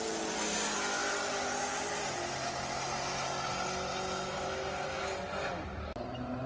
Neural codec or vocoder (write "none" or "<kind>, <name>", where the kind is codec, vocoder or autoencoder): none